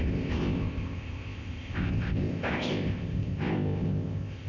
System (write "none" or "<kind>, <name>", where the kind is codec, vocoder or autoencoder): codec, ZipCodec